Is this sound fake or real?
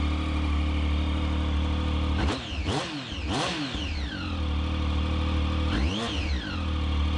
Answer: real